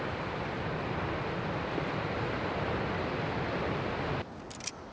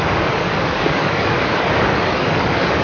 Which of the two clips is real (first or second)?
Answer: first